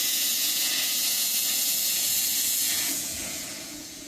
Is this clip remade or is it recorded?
remade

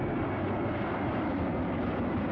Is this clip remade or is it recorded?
recorded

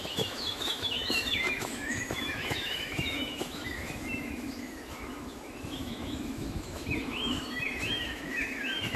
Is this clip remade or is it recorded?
remade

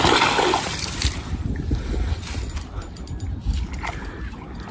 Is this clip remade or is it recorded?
recorded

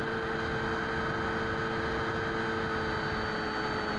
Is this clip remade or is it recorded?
recorded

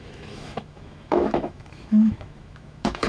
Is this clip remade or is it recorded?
remade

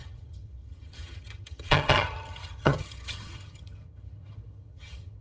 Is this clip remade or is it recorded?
remade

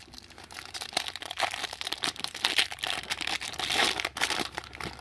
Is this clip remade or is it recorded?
remade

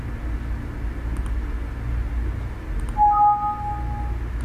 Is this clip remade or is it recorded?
recorded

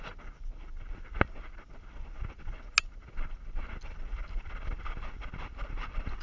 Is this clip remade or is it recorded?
recorded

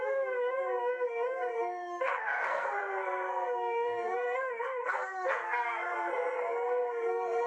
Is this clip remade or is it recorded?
remade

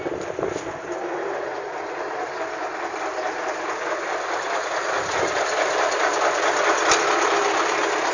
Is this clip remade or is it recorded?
recorded